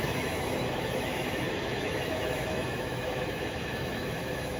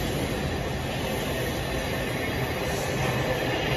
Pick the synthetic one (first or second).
first